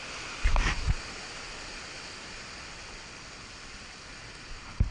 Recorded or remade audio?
recorded